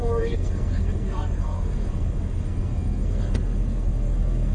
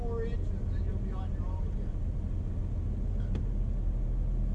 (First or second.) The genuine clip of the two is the second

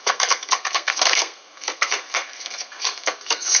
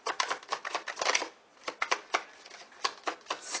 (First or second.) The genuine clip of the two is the second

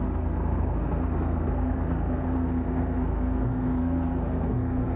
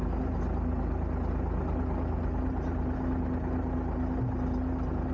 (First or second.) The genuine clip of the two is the second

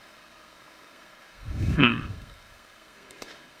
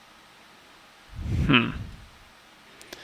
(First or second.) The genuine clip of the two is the second